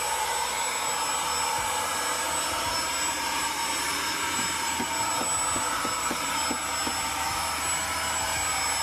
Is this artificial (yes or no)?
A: no